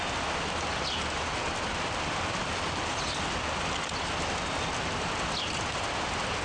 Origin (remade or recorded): recorded